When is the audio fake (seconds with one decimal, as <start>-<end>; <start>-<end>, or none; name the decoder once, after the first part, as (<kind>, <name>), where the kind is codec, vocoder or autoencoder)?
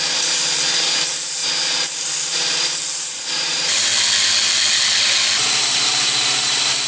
0.0-1.4 (vocoder, BigVGAN v2); 2.3-3.9; 5.4-6.9